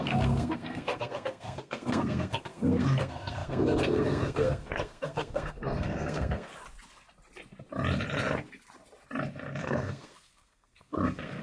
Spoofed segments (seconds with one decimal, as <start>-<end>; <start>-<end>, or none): 0.0-6.5; 9.6-11.4